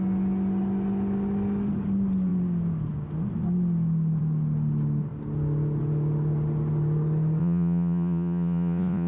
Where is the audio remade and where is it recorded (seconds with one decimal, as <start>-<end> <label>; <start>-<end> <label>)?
0.0-7.4 recorded; 7.4-9.1 remade